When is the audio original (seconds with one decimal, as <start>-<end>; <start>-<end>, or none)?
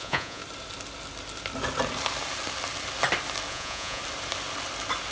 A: 0.4-3.5; 4.0-5.1